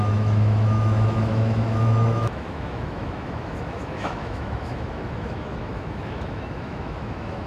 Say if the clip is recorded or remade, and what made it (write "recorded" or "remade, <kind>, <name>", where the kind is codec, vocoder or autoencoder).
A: remade, autoencoder, DAC-VAE